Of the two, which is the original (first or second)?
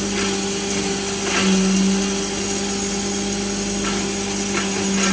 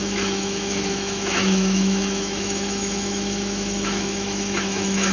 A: first